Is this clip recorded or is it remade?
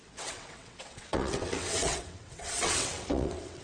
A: remade